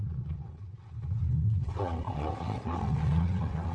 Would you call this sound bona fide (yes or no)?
no